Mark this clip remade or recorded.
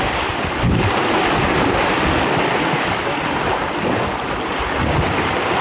recorded